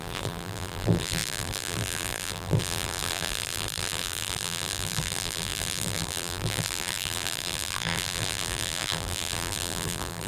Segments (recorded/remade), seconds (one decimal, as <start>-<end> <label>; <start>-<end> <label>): 0.0-10.3 remade